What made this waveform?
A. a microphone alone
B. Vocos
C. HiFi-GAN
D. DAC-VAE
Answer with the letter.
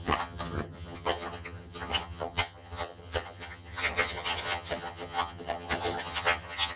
C